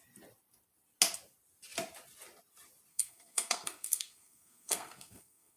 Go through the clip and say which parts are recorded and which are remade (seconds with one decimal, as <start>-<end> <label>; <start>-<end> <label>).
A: 0.0-2.9 recorded; 2.9-5.6 remade

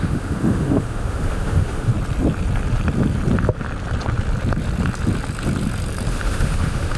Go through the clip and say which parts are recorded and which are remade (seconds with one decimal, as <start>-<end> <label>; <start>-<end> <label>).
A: 0.0-1.9 remade; 1.9-6.1 recorded; 6.1-7.0 remade

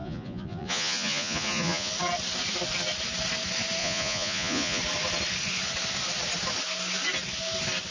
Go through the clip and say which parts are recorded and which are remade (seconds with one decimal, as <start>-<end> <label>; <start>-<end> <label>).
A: 0.0-1.9 remade; 1.9-3.8 recorded; 3.8-4.8 remade; 4.8-7.9 recorded

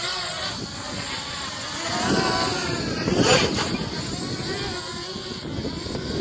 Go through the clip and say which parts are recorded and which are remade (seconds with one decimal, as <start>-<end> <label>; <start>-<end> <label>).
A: 0.0-2.6 recorded; 2.6-4.4 remade; 4.4-6.2 recorded

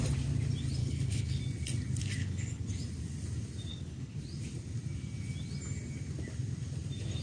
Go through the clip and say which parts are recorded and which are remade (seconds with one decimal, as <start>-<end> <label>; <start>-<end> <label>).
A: 0.0-0.8 recorded; 0.8-1.4 remade; 1.4-2.2 recorded; 2.2-2.7 remade; 2.7-3.7 recorded; 3.7-4.2 remade; 4.2-7.2 recorded

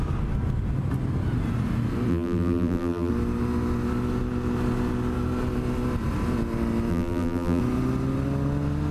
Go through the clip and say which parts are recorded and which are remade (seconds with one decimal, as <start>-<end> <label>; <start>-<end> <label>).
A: 0.0-2.1 recorded; 2.1-3.1 remade; 3.1-6.9 recorded; 6.9-7.6 remade; 7.6-8.9 recorded

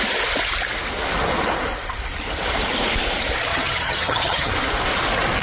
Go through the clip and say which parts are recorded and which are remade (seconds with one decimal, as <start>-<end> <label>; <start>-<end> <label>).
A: 0.0-3.5 recorded; 3.5-4.5 remade; 4.5-5.4 recorded